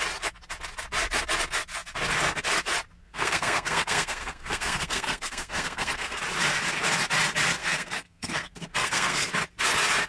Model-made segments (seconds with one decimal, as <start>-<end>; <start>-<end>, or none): 3.0-6.2; 7.6-9.3